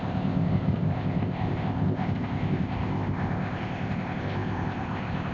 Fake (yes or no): yes